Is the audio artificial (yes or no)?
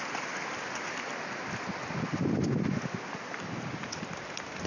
no